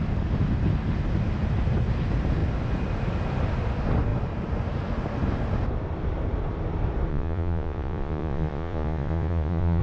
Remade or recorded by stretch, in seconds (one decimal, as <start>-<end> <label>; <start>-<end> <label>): 0.0-7.1 recorded; 7.1-9.8 remade